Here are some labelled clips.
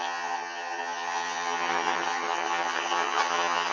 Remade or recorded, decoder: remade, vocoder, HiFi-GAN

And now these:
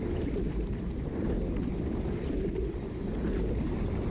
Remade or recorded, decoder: recorded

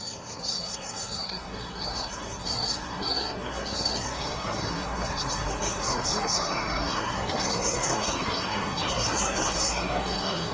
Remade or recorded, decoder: remade, codec, SNAC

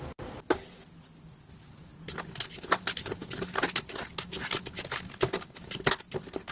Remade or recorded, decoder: recorded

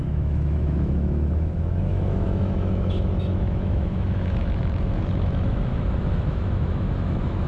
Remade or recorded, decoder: remade, autoencoder, DAC-VAE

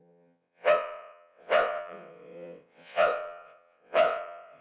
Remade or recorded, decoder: remade, vocoder, WaveNeXt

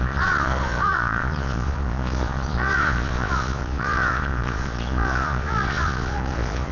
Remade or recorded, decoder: remade, vocoder, Vocos